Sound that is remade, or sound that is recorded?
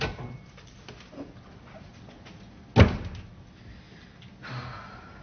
recorded